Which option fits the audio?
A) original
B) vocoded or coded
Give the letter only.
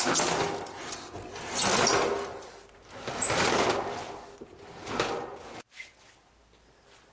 A